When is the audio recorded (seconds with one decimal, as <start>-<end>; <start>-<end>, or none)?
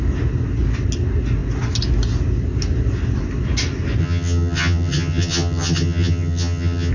0.0-4.0